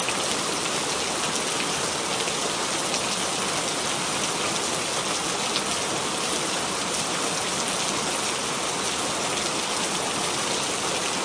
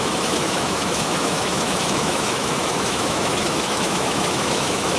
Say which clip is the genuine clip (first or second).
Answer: first